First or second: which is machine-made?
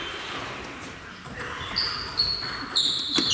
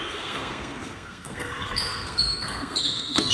second